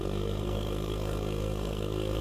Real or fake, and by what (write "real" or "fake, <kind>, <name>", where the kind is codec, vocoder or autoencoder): fake, codec, SNAC